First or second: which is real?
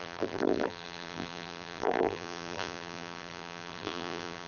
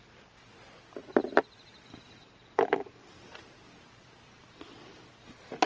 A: second